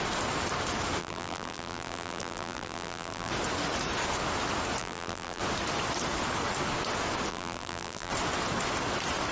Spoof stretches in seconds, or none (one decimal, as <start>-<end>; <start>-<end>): 1.0-3.3; 4.8-5.4; 7.3-8.1